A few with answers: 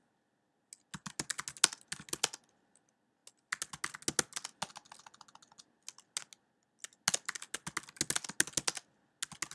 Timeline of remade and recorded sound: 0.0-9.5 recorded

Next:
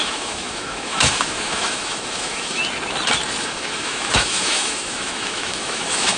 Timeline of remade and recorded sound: 0.0-2.6 remade; 2.6-3.4 recorded; 3.4-6.2 remade

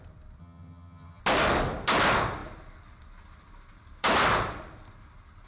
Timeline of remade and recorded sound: 0.0-0.4 recorded; 0.4-1.2 remade; 1.2-5.5 recorded

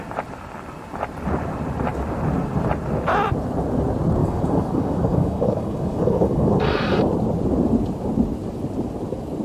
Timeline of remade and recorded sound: 0.0-4.2 recorded; 4.2-7.0 remade; 7.0-9.4 recorded

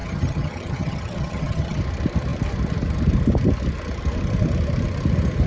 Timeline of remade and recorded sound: 0.0-1.8 remade; 1.8-5.5 recorded

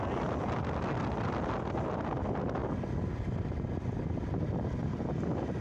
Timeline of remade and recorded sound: 0.0-5.6 recorded